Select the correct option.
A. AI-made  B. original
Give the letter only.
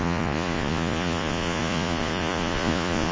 A